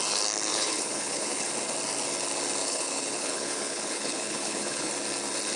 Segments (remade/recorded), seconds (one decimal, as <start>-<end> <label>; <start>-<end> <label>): 0.0-0.5 recorded; 0.5-1.5 remade; 1.5-2.6 recorded; 2.6-4.9 remade; 4.9-5.6 recorded